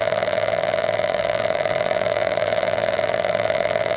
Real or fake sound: fake